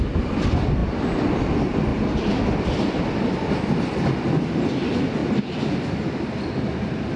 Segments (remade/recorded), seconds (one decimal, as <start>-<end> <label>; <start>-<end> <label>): 0.0-1.9 recorded; 1.9-3.3 remade; 3.3-7.2 recorded

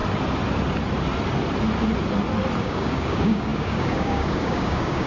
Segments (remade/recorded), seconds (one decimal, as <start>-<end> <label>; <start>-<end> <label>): 0.0-2.6 recorded; 2.6-5.1 remade

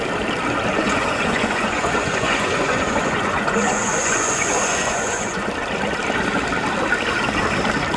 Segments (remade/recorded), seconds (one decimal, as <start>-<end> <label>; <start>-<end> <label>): 0.0-0.7 recorded; 0.7-5.5 remade; 5.5-8.0 recorded

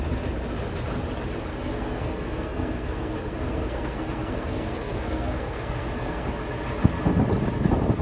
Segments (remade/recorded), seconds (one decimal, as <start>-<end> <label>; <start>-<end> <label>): 0.0-1.5 recorded; 1.5-6.3 remade; 6.3-8.0 recorded

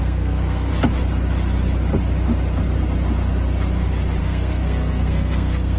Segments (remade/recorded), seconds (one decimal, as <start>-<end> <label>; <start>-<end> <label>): 0.0-0.7 remade; 0.7-4.2 recorded; 4.2-5.8 remade